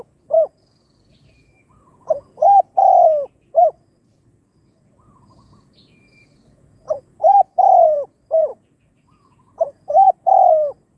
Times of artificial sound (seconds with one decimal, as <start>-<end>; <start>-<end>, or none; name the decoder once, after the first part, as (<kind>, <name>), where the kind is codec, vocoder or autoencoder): 0.0-11.0 (vocoder, Vocos)